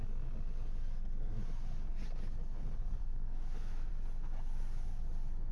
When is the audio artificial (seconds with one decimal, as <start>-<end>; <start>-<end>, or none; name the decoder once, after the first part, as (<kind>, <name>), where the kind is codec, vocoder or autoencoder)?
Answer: 3.0-3.9 (autoencoder, DAC-VAE)